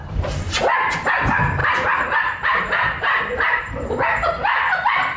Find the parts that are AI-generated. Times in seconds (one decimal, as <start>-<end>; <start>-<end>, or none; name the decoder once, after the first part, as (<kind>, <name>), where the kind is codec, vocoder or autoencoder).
1.6-4.1 (vocoder, BigVGAN v2)